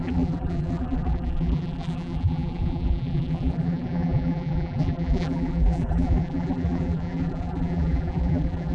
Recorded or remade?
remade